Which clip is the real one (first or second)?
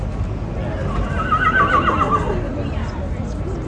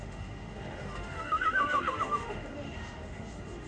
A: first